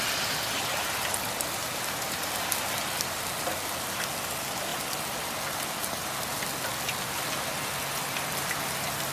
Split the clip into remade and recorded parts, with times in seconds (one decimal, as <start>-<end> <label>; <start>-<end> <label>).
0.0-9.1 recorded